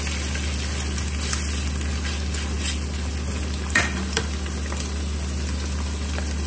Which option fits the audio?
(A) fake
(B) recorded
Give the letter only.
B